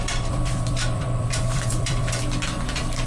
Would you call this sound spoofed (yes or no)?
yes